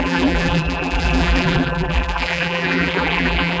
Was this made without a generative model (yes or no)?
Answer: no